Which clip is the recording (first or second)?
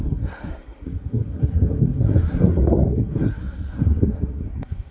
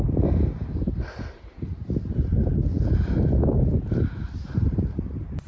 second